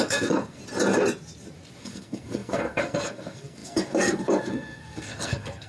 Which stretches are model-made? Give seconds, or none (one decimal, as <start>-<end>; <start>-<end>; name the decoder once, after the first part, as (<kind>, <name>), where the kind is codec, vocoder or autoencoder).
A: 0.0-0.6 (codec, SNAC); 1.8-5.7